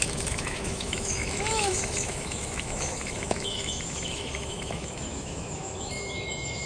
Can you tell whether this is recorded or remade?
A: remade